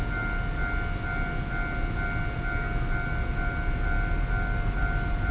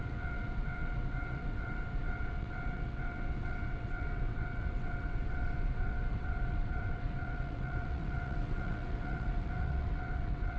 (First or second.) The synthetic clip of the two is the second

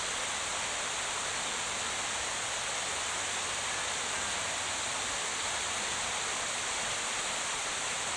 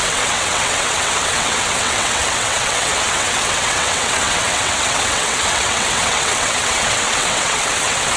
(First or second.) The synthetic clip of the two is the second